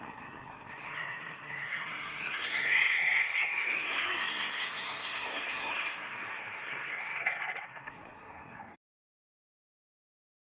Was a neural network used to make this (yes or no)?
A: yes